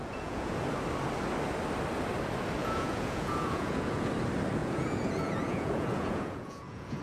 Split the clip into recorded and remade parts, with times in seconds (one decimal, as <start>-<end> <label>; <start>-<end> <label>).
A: 0.0-0.6 remade; 0.6-2.6 recorded; 2.6-4.1 remade; 4.1-4.6 recorded; 4.6-7.0 remade